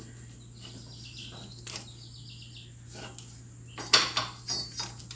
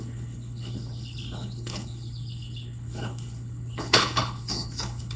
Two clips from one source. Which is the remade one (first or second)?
second